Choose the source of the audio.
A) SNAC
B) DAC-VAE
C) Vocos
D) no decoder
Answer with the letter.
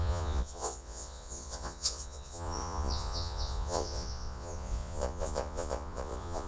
C